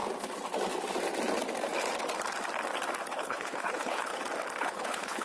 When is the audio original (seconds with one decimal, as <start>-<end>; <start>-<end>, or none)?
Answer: 0.0-3.1; 4.1-4.6

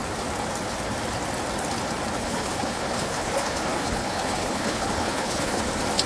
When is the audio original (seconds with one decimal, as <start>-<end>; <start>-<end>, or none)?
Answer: 0.0-2.2; 5.6-6.1

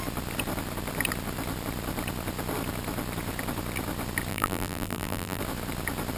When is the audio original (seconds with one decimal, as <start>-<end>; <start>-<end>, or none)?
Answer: 0.0-4.3; 5.4-6.2

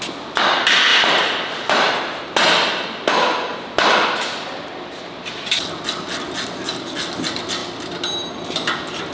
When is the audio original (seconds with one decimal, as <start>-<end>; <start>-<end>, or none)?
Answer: 0.0-0.9; 1.9-9.1

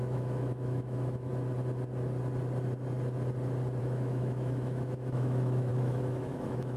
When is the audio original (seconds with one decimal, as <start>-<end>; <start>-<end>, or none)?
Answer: 1.3-3.8

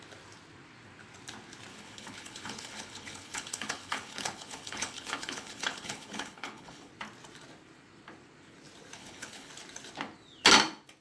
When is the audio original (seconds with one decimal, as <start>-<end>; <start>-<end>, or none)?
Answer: 0.0-1.7; 6.9-9.0; 9.5-11.0

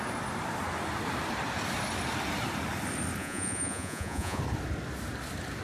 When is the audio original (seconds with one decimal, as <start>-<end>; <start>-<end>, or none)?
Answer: 0.0-3.2; 4.4-5.6